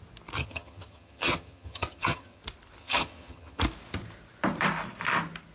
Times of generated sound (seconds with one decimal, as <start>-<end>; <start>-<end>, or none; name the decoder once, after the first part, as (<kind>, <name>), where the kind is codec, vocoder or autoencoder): 0.4-2.4 (vocoder, HiFi-GAN); 2.8-3.6

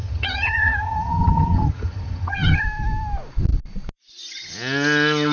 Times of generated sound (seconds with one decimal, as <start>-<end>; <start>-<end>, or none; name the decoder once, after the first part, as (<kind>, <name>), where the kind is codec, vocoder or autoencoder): 0.0-2.6 (vocoder, HiFi-GAN)

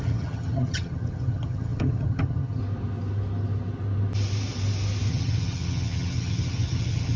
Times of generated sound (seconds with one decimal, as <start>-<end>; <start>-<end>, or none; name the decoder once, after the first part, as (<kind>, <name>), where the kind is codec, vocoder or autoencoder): 0.0-2.6 (vocoder, HiFi-GAN); 5.1-7.2

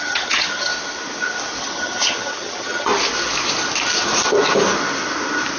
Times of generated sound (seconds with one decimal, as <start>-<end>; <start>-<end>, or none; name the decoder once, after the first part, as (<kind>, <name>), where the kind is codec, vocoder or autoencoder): 0.0-0.7 (vocoder, HiFi-GAN); 1.6-2.9

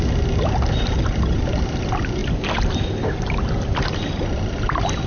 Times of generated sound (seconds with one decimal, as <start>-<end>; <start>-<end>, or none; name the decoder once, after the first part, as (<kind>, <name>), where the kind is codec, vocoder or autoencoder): none

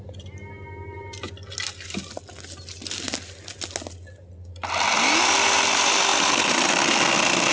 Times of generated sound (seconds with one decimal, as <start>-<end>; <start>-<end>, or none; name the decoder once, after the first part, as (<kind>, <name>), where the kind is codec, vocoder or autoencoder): none

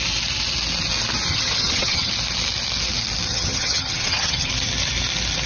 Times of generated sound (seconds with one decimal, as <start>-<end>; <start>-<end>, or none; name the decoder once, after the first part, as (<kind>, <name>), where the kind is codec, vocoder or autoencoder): 1.3-2.1 (vocoder, HiFi-GAN); 3.3-4.5

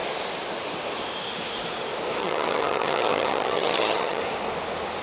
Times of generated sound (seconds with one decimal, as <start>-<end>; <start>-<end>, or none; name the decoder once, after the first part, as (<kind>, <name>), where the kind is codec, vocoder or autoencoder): 2.2-4.2 (vocoder, HiFi-GAN)